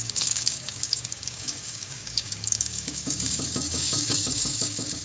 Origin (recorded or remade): remade